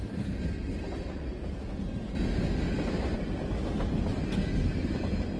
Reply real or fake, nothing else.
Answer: real